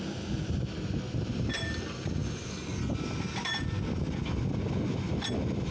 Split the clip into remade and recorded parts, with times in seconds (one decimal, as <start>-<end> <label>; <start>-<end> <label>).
0.0-5.7 recorded

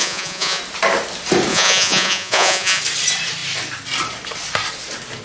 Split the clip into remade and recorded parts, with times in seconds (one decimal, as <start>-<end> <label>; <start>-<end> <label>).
0.0-0.6 remade; 0.6-1.5 recorded; 1.5-2.8 remade; 2.8-5.2 recorded

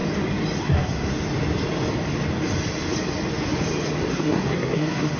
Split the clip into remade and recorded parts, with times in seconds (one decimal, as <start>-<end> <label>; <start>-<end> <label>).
0.0-0.6 recorded; 0.6-1.1 remade; 1.1-4.1 recorded; 4.1-5.2 remade